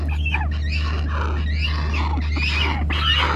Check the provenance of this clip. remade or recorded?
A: recorded